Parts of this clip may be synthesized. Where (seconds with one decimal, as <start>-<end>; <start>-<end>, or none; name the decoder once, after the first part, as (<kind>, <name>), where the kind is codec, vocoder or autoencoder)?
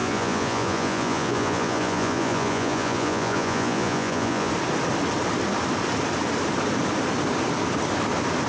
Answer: 0.0-4.5 (vocoder, Vocos)